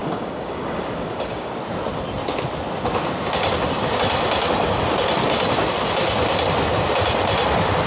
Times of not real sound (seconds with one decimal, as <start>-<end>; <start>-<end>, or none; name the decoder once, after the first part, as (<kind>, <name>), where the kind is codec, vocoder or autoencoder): 0.0-1.5 (codec, DAC)